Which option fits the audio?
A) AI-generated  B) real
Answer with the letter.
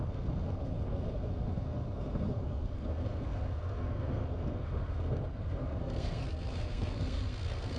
A